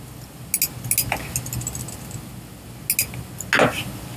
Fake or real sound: real